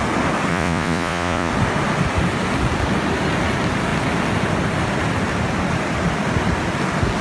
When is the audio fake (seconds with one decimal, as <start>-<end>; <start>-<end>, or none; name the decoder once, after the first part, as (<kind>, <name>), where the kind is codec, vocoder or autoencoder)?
0.5-1.5 (vocoder, Vocos)